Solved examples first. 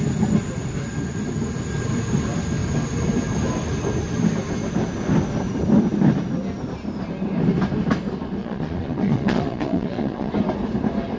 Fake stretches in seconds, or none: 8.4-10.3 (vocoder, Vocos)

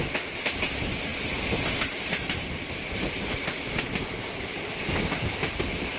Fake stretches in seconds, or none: none

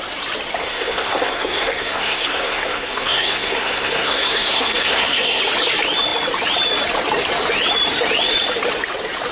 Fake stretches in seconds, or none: 0.6-5.4 (codec, SNAC)

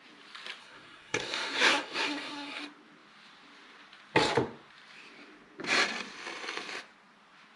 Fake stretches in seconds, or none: 0.6-2.6 (codec, SNAC)

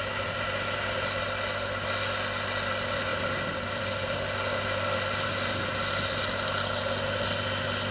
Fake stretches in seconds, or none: none

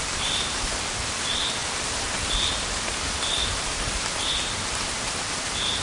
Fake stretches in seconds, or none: none

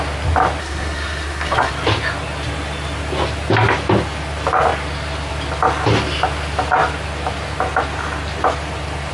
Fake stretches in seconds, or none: 0.6-1.7 (codec, SNAC)

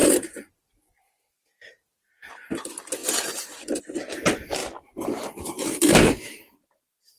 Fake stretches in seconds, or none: 0.0-0.6 (vocoder, BigVGAN v2); 3.0-3.8